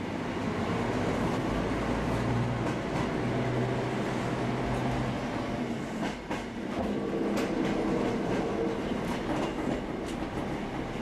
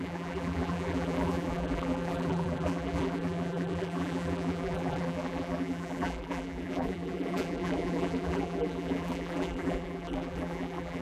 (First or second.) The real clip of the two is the first